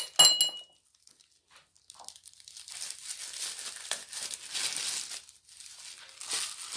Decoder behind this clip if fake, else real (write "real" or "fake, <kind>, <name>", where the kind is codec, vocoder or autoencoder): real